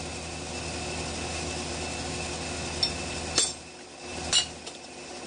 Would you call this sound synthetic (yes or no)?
no